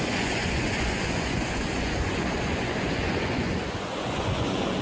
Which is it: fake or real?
fake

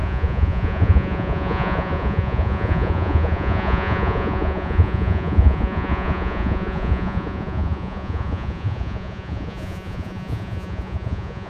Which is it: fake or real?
fake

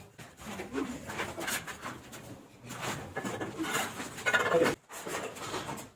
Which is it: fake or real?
real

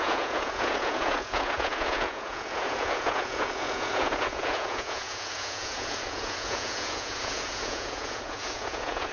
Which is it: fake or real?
fake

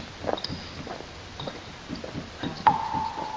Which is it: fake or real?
real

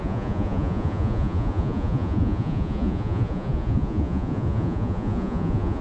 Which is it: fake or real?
fake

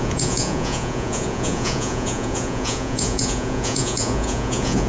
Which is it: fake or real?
fake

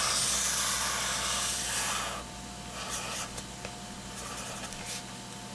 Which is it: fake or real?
real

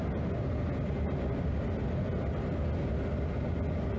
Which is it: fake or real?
real